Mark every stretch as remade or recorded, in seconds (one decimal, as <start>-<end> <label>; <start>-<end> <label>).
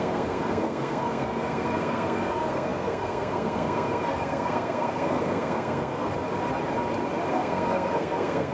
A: 0.0-6.1 remade; 6.1-7.3 recorded; 7.3-8.5 remade